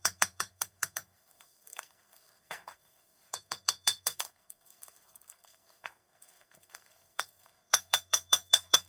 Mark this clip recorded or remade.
remade